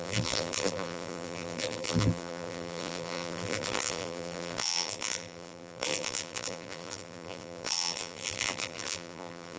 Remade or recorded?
remade